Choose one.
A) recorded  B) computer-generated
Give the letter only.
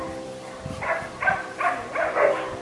A